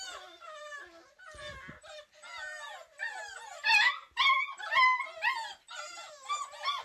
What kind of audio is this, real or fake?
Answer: real